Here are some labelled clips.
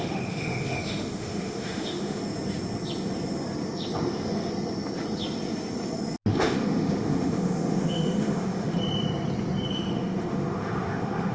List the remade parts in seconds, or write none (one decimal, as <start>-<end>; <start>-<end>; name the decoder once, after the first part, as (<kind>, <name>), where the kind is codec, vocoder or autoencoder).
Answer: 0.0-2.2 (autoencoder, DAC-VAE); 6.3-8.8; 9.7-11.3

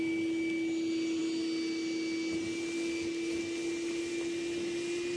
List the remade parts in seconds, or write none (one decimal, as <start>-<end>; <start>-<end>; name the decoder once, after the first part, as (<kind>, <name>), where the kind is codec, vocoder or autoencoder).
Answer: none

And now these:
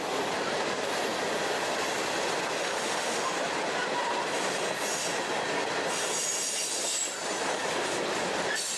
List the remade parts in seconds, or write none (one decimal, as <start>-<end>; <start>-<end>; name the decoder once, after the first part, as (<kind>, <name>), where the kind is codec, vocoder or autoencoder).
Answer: 2.6-3.3 (autoencoder, DAC-VAE)

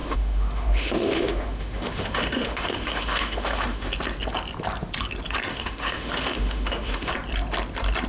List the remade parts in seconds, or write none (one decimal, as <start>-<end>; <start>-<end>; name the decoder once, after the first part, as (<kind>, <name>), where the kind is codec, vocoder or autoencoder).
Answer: 0.0-3.9 (autoencoder, DAC-VAE); 5.5-7.1